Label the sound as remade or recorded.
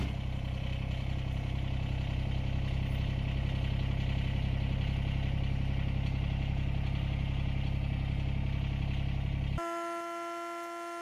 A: recorded